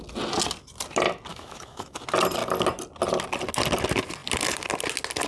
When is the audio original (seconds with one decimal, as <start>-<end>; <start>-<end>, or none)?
0.0-1.3; 2.0-5.3